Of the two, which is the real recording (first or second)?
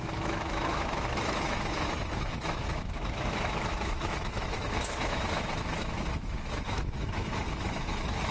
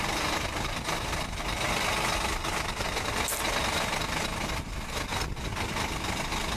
second